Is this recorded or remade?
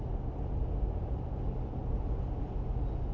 recorded